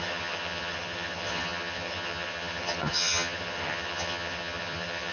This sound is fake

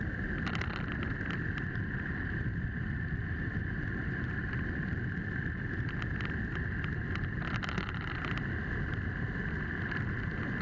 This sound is real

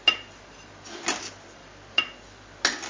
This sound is real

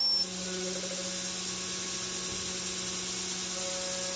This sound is real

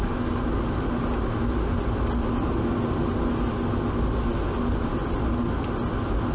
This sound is real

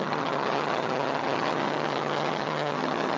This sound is fake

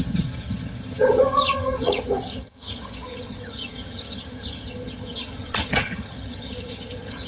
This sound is fake